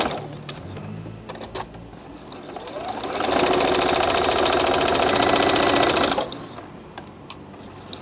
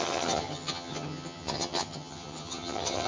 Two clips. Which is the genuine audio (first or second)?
first